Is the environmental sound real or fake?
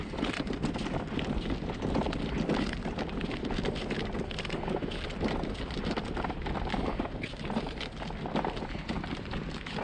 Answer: real